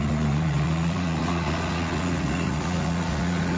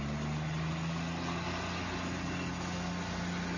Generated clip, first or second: first